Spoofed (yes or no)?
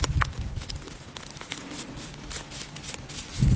no